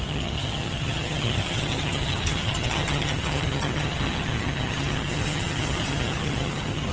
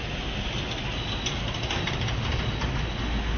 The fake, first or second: first